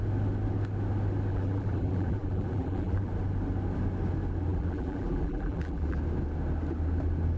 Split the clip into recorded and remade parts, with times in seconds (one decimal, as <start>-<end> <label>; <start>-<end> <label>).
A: 0.0-1.3 recorded; 1.3-3.1 remade; 3.1-4.5 recorded; 4.5-6.0 remade; 6.0-7.4 recorded